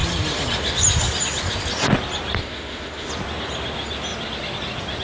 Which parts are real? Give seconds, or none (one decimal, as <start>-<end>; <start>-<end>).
0.0-2.4; 3.1-5.0